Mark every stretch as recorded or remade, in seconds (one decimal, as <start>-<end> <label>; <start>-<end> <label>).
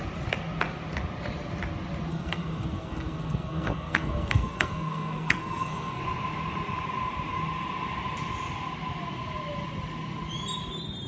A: 0.0-2.1 recorded; 2.1-6.0 remade; 6.0-11.1 recorded